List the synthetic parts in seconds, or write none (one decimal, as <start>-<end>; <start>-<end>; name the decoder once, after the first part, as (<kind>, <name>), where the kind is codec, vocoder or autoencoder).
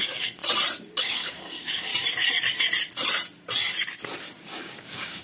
0.0-0.4 (codec, DAC); 1.0-1.9; 4.4-5.2